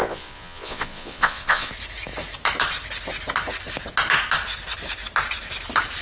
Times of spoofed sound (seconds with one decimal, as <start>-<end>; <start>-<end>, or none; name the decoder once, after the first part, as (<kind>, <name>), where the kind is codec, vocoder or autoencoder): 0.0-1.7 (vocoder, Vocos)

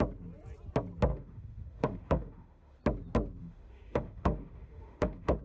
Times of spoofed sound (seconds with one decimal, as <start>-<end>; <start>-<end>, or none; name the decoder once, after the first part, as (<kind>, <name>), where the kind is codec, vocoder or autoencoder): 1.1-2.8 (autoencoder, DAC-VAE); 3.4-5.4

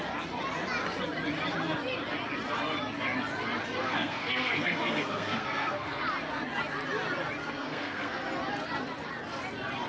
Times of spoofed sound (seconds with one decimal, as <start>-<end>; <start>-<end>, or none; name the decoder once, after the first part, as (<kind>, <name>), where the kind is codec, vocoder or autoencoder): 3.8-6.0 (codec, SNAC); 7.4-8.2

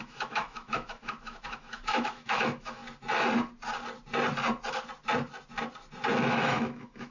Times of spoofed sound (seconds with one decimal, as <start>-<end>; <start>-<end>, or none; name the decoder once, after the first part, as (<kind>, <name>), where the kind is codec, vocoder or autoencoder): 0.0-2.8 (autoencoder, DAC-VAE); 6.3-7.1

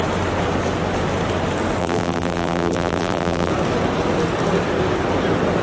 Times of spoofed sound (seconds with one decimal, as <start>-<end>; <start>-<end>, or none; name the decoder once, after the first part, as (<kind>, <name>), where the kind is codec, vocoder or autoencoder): 1.8-3.5 (vocoder, BigVGAN v2)

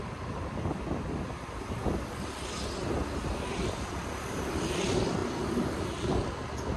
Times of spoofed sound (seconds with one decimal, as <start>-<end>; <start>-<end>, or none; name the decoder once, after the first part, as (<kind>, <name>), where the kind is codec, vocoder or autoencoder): none

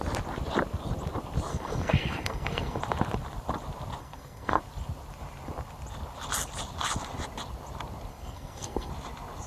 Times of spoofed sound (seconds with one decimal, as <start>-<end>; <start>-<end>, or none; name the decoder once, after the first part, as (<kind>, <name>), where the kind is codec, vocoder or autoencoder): 1.5-2.8 (codec, SNAC); 4.0-4.6; 8.1-8.9